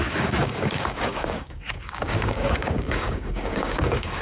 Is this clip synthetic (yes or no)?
yes